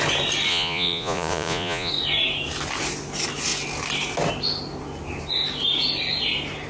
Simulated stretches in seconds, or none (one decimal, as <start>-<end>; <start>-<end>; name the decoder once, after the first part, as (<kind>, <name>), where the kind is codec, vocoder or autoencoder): 0.5-1.9 (vocoder, Vocos)